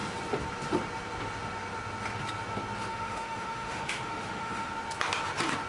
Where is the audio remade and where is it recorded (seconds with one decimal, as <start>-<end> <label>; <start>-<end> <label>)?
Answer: 0.0-2.9 recorded; 2.9-4.7 remade; 4.7-5.7 recorded